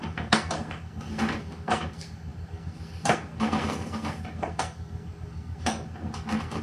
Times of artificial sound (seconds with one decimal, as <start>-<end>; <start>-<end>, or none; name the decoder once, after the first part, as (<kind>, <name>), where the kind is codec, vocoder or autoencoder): 0.0-6.6 (codec, SNAC)